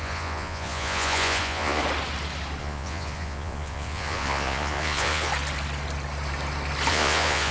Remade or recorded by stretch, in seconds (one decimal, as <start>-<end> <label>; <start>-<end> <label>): 0.0-1.8 remade; 1.8-2.6 recorded; 2.6-5.3 remade; 5.3-6.9 recorded; 6.9-7.5 remade